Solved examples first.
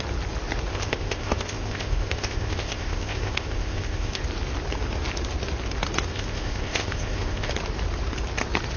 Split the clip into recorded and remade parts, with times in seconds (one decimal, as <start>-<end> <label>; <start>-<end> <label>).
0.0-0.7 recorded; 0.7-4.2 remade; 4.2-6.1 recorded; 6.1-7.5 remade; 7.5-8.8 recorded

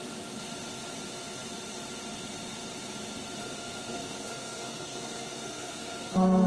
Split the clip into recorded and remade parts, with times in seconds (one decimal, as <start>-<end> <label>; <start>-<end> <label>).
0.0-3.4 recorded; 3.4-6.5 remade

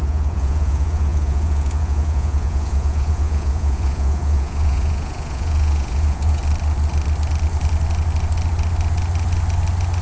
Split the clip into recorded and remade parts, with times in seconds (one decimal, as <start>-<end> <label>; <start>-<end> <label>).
0.0-6.4 remade; 6.4-10.0 recorded

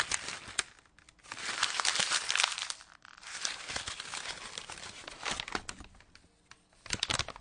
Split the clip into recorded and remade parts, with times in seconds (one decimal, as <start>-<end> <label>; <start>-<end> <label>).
0.0-7.4 recorded

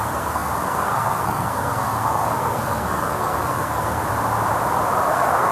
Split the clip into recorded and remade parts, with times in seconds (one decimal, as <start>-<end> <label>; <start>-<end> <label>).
0.0-4.0 remade; 4.0-5.1 recorded; 5.1-5.5 remade